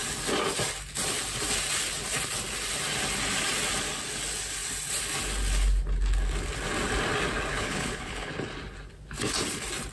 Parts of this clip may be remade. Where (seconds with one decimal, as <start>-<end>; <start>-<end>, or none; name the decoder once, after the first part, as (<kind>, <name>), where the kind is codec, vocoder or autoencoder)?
7.5-8.3 (codec, HILCodec)